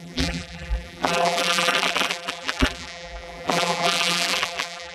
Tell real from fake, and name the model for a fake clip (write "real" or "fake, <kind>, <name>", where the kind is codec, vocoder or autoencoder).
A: fake, vocoder, BigVGAN v2